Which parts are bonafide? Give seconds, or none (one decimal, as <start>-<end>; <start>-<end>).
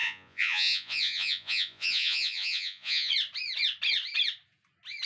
3.1-5.1